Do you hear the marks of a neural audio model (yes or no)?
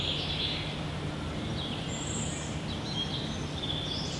no